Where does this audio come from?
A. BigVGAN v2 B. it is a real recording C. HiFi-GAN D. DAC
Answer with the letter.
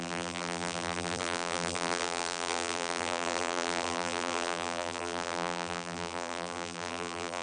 A